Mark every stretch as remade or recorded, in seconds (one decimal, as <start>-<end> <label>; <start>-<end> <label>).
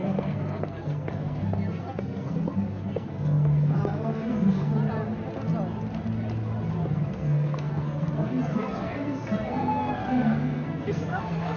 0.0-4.7 remade; 4.7-6.9 recorded; 6.9-11.6 remade